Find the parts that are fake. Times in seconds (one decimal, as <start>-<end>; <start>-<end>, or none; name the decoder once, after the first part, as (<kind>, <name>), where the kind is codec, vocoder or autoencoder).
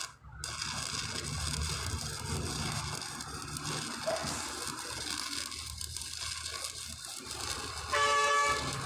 none